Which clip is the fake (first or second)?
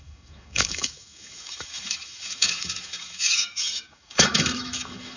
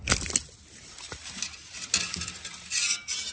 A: first